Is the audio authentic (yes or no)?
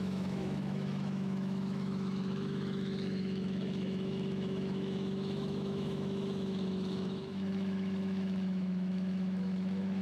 no